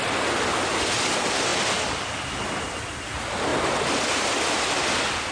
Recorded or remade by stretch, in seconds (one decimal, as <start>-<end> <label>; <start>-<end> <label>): 0.0-5.3 recorded